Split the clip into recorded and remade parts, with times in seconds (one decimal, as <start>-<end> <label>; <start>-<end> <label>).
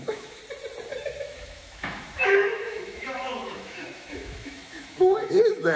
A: 0.0-0.4 remade; 0.4-1.2 recorded; 1.2-5.8 remade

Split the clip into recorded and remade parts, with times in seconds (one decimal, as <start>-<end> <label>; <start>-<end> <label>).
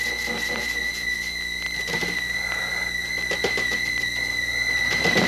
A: 0.0-5.3 recorded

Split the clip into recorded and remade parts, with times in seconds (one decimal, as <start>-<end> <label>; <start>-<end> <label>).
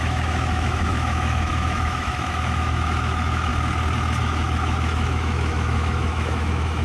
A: 0.0-3.5 remade; 3.5-4.2 recorded; 4.2-6.8 remade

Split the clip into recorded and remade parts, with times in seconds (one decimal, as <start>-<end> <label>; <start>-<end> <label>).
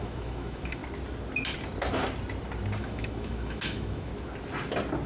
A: 0.0-0.8 remade; 0.8-2.8 recorded; 2.8-4.1 remade; 4.1-5.1 recorded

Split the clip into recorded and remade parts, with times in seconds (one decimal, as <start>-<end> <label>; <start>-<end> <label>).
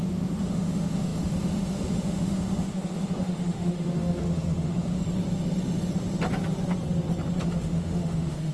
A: 0.0-5.0 remade; 5.0-7.4 recorded; 7.4-8.5 remade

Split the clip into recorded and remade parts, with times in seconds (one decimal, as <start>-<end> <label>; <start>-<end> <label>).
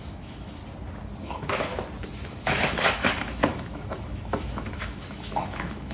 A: 0.0-0.6 remade; 0.6-1.2 recorded; 1.2-1.7 remade; 1.7-2.3 recorded; 2.3-5.9 remade